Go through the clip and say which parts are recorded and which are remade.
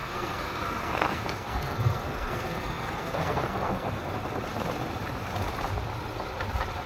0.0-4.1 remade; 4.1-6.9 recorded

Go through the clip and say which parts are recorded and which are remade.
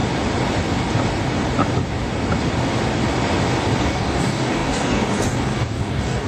0.0-3.8 recorded; 3.8-6.3 remade